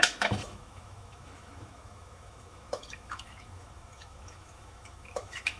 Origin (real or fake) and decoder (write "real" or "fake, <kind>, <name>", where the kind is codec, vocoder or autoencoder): fake, autoencoder, DAC-VAE